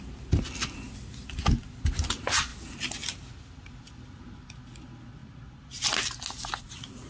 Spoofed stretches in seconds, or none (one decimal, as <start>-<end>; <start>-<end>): none